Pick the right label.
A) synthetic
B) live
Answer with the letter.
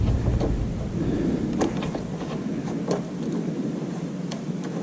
B